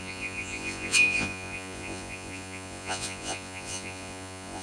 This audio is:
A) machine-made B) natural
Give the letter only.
A